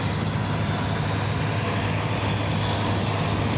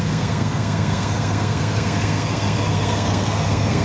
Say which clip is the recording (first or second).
first